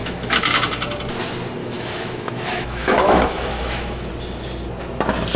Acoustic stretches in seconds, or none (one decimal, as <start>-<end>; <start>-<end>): 0.6-1.6; 4.1-5.4